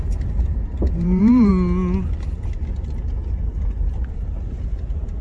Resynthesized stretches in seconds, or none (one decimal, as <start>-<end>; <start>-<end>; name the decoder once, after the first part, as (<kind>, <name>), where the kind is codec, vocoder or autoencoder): 0.0-1.5 (vocoder, BigVGAN v2); 4.6-5.2